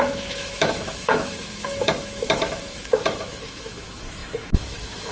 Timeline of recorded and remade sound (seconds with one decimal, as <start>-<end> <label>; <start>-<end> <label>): 0.0-5.1 remade